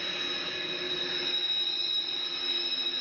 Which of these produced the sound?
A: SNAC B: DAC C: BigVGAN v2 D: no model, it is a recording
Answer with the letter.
D